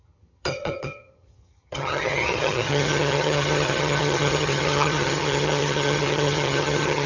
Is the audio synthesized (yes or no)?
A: yes